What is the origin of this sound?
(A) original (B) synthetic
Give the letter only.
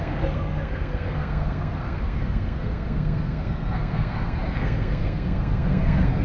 B